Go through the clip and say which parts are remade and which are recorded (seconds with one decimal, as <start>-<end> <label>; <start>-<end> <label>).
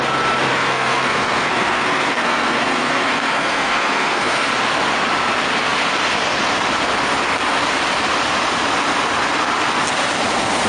0.0-0.5 recorded; 0.5-4.5 remade; 4.5-10.7 recorded